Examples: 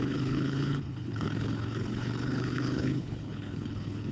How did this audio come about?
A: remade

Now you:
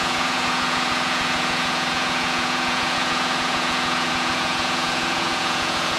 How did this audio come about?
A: remade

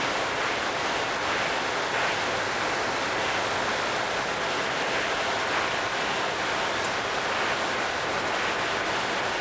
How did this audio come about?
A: recorded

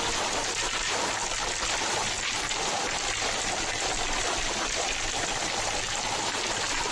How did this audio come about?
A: recorded